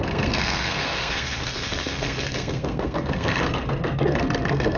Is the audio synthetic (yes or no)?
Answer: yes